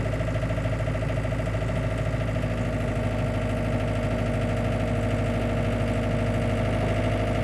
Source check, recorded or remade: recorded